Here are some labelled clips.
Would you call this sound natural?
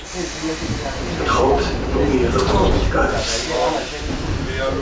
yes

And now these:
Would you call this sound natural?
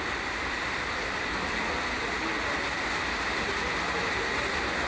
yes